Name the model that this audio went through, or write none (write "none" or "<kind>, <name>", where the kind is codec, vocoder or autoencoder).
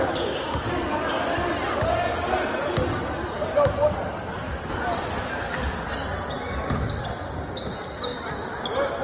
none